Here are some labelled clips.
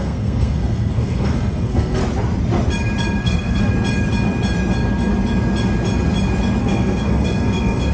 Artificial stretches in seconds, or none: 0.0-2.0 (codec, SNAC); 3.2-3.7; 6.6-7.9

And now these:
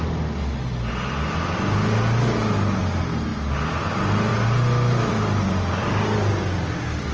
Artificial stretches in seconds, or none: none

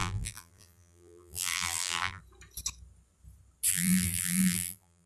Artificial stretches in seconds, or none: 0.0-2.2 (vocoder, BigVGAN v2); 3.7-5.1

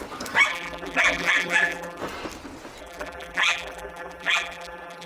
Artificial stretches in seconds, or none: 0.5-2.0 (vocoder, BigVGAN v2); 2.8-5.1

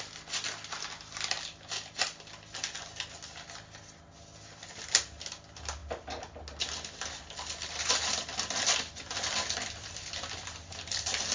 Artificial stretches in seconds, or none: none

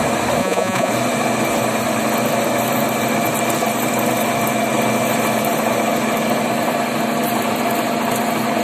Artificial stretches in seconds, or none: 0.4-0.9 (vocoder, Vocos)

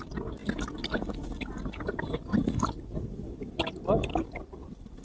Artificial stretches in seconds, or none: none

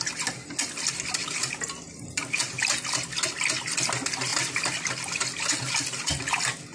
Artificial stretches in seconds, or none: none